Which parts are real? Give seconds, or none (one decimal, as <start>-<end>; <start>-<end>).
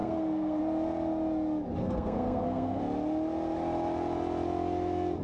0.6-1.8; 2.8-5.2